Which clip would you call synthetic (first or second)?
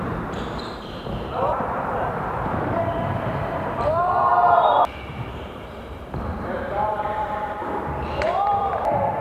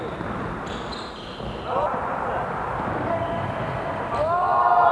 first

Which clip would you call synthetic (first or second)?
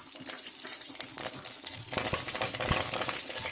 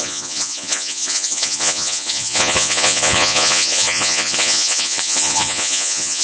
second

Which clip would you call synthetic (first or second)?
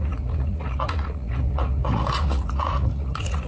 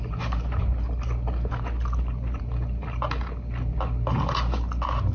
first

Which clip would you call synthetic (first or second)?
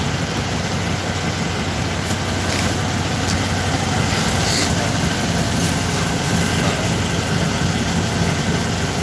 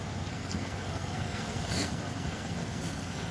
second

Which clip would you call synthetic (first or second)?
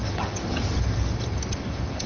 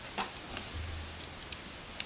first